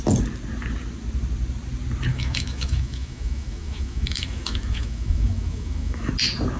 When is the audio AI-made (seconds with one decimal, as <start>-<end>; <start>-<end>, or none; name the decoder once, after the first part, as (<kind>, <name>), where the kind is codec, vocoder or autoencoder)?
2.1-6.1 (autoencoder, DAC-VAE)

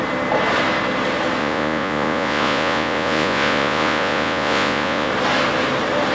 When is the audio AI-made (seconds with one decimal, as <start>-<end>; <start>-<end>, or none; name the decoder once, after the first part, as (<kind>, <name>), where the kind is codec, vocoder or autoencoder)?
1.4-5.1 (vocoder, Vocos)

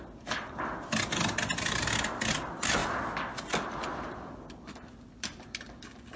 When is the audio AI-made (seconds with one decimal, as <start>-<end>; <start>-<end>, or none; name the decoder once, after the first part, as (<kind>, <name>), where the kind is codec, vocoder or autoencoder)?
none

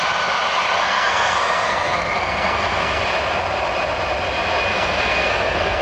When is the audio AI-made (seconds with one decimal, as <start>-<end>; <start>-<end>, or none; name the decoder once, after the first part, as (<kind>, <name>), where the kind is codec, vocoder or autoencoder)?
0.8-3.0 (codec, SNAC); 4.7-5.8

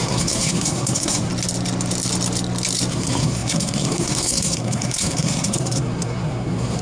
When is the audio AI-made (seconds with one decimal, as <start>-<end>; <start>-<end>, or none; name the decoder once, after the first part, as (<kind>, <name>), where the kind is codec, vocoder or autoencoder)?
0.0-1.3 (codec, SNAC); 2.9-6.8

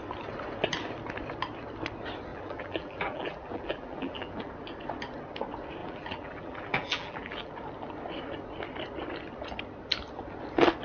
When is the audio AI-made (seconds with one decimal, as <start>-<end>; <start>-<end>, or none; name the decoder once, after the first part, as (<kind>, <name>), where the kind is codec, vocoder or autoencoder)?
2.3-4.5 (vocoder, BigVGAN v2); 5.8-7.5